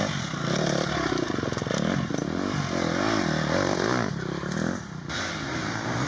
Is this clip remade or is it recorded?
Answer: recorded